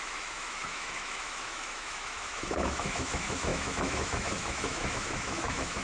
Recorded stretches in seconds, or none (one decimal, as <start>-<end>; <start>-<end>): none